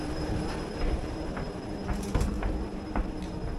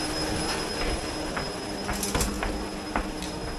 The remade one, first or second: first